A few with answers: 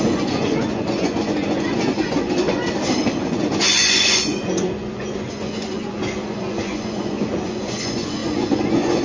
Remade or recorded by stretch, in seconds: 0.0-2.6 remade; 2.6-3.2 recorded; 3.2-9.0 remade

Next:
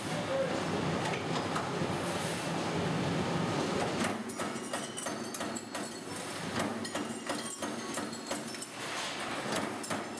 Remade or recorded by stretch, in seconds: 0.0-4.2 recorded; 4.2-4.7 remade; 4.7-10.2 recorded